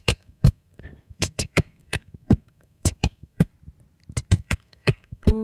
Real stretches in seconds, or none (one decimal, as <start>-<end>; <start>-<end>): 3.5-4.3